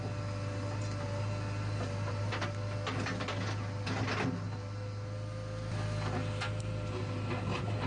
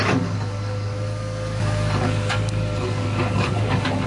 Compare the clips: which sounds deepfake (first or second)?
second